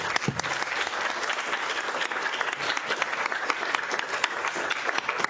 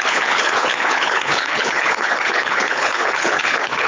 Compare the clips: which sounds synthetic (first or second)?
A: second